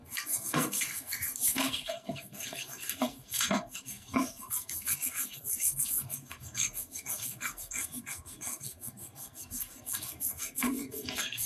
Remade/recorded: remade